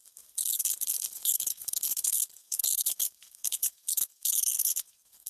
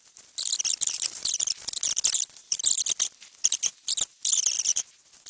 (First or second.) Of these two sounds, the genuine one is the second